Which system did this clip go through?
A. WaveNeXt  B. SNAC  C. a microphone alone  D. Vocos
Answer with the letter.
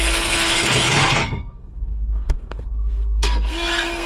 B